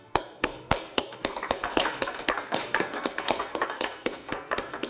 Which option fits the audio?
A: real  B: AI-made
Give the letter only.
B